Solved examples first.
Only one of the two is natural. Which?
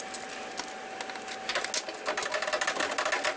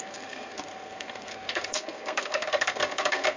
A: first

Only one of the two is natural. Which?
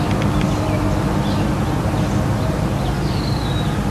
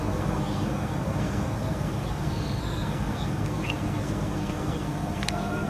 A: first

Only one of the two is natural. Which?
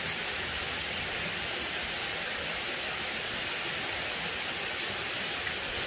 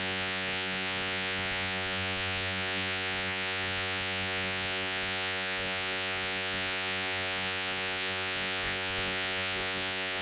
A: first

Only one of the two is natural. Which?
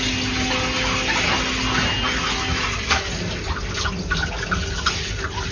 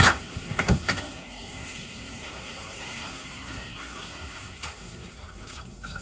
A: first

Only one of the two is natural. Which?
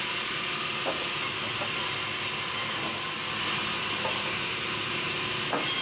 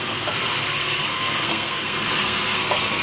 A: first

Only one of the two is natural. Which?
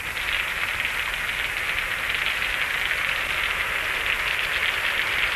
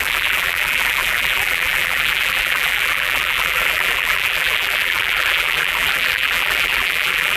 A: first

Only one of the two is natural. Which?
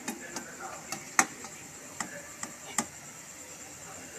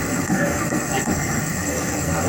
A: first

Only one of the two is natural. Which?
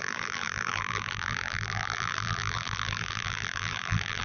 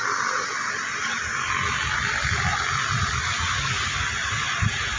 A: second